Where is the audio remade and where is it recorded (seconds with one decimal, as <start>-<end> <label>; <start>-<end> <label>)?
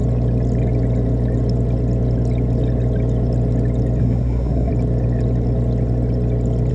0.0-4.0 recorded; 4.0-4.7 remade; 4.7-6.7 recorded